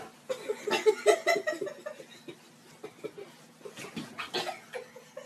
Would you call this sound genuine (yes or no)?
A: yes